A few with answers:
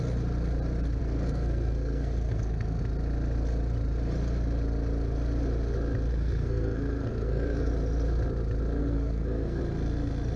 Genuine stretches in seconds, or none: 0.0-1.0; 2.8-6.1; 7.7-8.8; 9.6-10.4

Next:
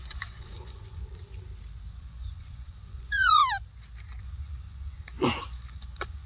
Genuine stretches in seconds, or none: 1.0-1.9; 3.4-4.2

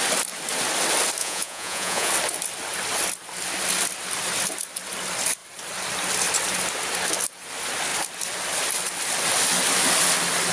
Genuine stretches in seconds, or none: 0.0-1.2; 2.1-10.5

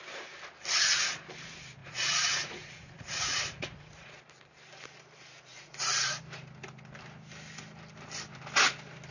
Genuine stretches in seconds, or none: 0.0-1.8; 4.2-5.5; 6.2-9.1

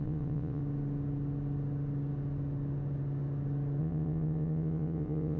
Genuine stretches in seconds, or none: 0.6-3.8

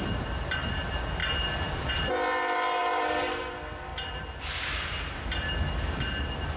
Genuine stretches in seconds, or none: 0.0-2.8; 3.4-3.9; 4.4-6.6

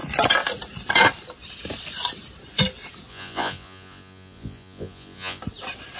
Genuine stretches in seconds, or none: 0.0-3.1; 5.4-6.0

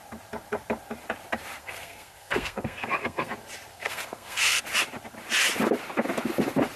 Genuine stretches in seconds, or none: 0.0-1.6; 3.3-3.7; 4.6-6.8